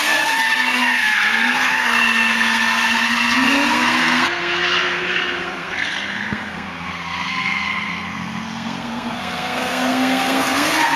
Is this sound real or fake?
fake